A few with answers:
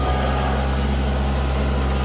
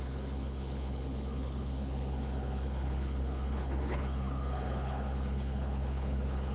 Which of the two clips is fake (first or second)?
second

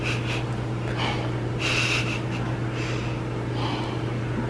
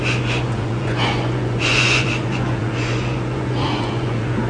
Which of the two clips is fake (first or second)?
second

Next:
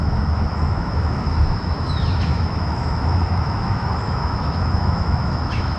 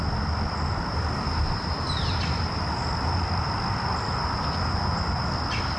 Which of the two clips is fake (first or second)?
first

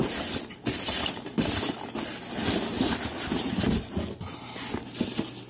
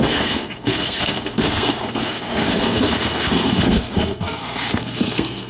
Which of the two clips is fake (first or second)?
second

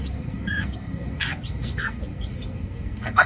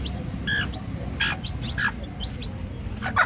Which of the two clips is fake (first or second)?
first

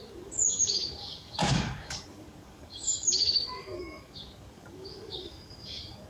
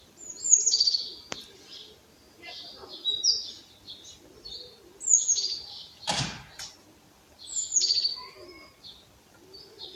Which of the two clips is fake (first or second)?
first